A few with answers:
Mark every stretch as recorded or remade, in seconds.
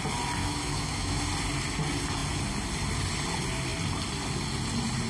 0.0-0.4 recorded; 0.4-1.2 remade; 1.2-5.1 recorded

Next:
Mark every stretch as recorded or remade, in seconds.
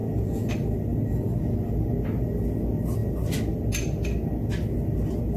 0.0-0.5 remade; 0.5-5.4 recorded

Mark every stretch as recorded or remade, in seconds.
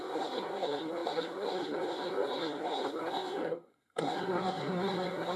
0.0-5.4 remade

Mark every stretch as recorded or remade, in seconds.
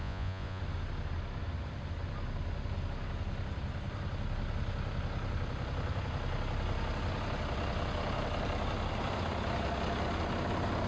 0.0-0.6 remade; 0.6-10.9 recorded